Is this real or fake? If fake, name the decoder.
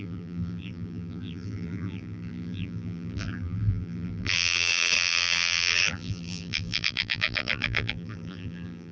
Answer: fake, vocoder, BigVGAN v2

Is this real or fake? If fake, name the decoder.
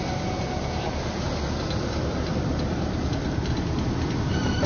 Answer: fake, vocoder, BigVGAN v2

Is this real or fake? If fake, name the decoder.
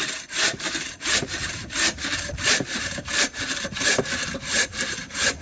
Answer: fake, vocoder, BigVGAN v2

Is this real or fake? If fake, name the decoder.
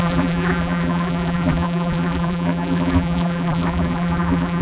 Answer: fake, vocoder, BigVGAN v2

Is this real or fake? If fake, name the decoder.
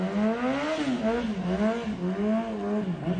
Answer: real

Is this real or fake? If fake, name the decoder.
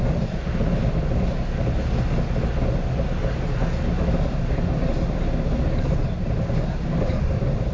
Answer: real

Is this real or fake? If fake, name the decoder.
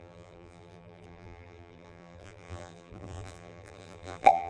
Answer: fake, vocoder, BigVGAN v2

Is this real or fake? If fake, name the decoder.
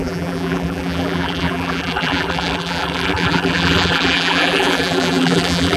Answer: fake, vocoder, BigVGAN v2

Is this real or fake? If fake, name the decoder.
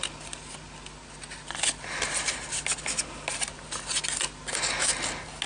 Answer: real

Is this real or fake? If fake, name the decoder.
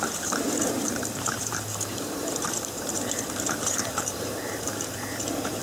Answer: fake, vocoder, BigVGAN v2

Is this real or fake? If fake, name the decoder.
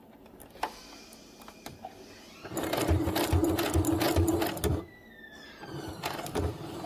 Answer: real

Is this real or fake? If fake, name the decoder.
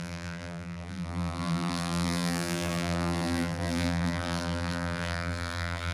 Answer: fake, vocoder, BigVGAN v2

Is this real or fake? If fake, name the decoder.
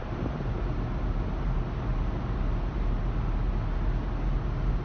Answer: real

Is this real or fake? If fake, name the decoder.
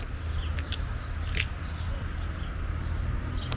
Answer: real